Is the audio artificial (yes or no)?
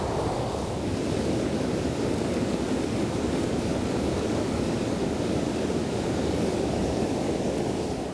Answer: yes